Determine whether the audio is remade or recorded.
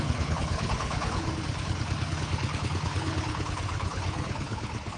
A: remade